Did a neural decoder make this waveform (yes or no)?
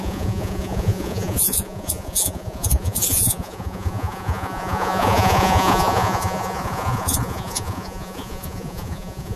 yes